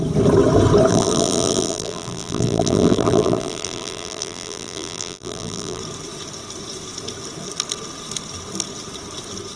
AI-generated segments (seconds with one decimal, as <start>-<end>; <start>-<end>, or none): 0.9-5.8